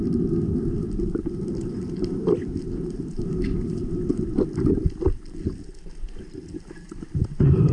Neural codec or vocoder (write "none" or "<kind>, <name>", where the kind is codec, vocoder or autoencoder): none